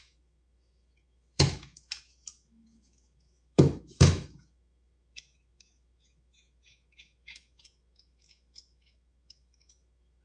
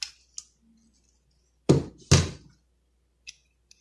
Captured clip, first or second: second